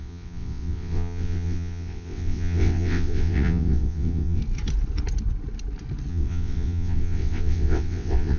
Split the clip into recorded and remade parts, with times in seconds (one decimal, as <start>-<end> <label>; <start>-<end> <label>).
0.0-4.4 remade; 4.4-6.1 recorded; 6.1-8.4 remade